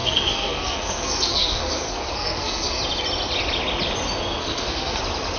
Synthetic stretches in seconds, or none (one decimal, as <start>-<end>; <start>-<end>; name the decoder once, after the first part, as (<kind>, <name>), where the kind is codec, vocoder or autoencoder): 0.0-2.8 (codec, SNAC); 4.4-5.0